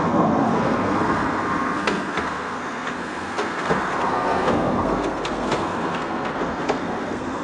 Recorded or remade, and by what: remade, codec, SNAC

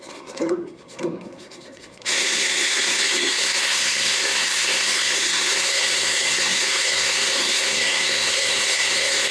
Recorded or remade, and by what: remade, codec, SNAC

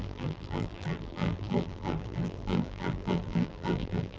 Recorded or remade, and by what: remade, vocoder, BigVGAN v2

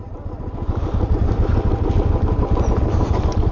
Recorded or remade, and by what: recorded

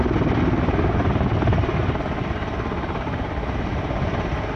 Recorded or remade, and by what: recorded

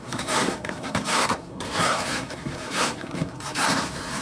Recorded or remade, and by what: remade, codec, SNAC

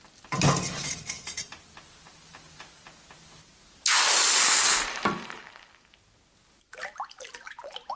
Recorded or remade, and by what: recorded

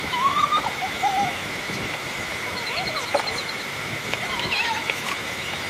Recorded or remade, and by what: remade, autoencoder, DAC-VAE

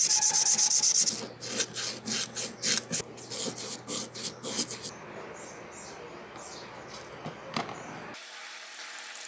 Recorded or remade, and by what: recorded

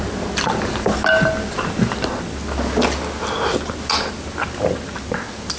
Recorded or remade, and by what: recorded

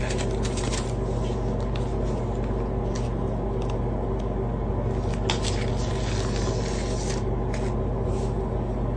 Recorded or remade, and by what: recorded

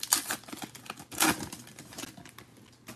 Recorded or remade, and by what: recorded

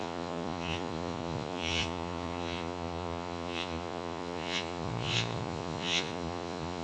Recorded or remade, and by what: remade, vocoder, Vocos